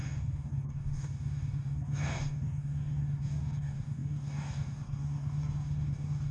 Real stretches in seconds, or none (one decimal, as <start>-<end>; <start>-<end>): none